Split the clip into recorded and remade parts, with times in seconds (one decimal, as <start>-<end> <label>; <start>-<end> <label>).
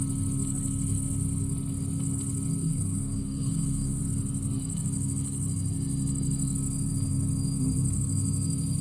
0.0-2.6 recorded; 2.6-4.0 remade; 4.0-8.8 recorded